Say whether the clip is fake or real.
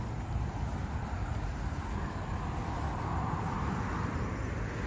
real